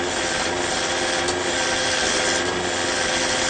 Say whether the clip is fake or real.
real